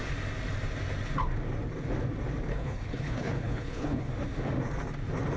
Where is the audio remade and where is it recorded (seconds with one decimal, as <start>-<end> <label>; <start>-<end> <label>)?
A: 0.0-2.5 recorded; 2.5-4.1 remade; 4.1-5.4 recorded